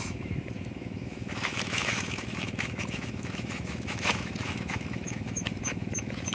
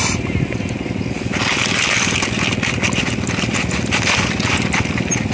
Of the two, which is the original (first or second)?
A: second